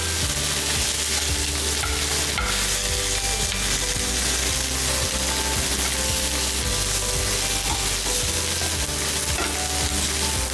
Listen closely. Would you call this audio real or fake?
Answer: real